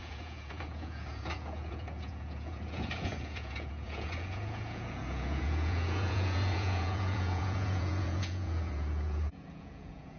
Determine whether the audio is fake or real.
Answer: fake